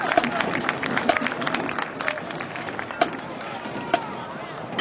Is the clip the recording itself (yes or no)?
yes